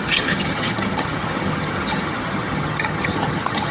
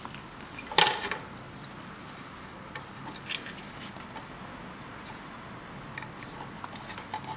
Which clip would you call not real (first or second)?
first